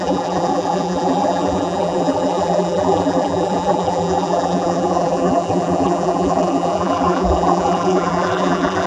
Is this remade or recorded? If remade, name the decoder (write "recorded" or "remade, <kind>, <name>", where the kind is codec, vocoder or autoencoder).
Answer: remade, vocoder, BigVGAN v2